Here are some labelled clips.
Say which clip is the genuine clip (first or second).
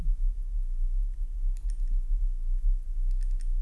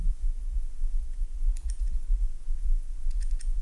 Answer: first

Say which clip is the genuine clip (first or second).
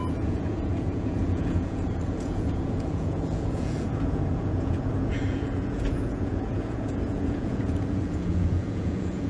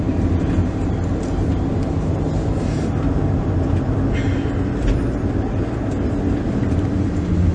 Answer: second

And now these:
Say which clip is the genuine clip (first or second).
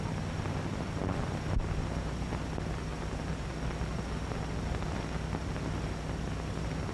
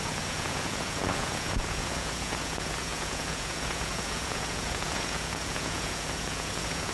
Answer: first